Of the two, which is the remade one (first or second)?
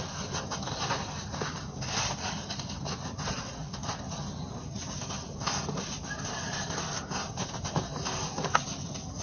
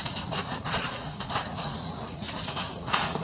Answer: second